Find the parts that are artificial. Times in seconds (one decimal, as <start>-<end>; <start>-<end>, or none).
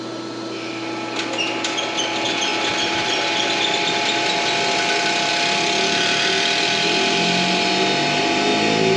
none